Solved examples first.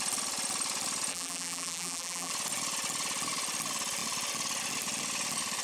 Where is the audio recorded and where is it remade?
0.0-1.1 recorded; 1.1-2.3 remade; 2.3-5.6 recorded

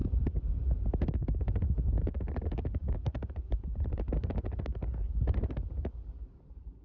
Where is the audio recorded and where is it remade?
0.0-1.4 recorded; 1.4-6.8 remade

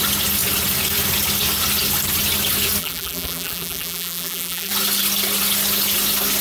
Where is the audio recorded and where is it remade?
0.0-2.8 recorded; 2.8-4.7 remade; 4.7-6.4 recorded

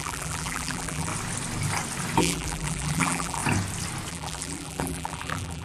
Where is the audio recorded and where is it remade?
0.0-1.1 remade; 1.1-2.2 recorded; 2.2-3.4 remade; 3.4-4.1 recorded; 4.1-5.6 remade